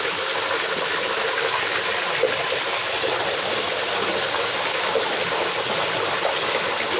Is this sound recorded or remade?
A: recorded